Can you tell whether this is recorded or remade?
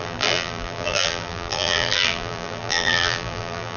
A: remade